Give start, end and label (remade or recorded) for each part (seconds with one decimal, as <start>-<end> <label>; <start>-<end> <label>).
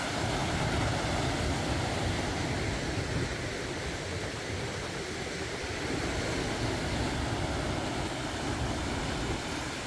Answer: 0.0-0.4 recorded; 0.4-2.2 remade; 2.2-4.1 recorded; 4.1-4.9 remade; 4.9-9.9 recorded